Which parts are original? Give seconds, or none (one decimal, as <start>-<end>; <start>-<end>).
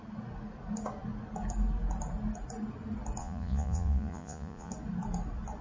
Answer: 0.0-3.2; 4.7-5.6